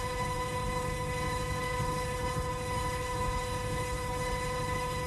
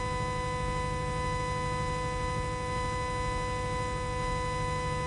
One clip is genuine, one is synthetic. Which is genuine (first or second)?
second